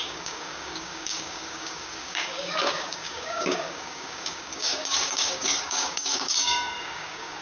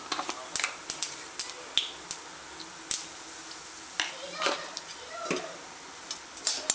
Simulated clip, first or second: first